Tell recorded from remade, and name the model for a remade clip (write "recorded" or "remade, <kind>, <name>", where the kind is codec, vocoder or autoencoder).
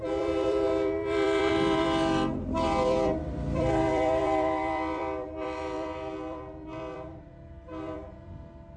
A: remade, vocoder, BigVGAN v2